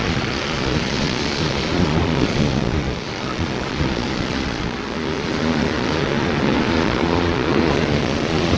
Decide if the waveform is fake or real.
fake